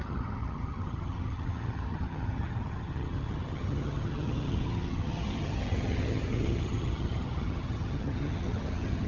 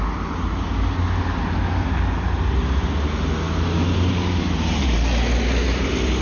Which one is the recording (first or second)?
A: second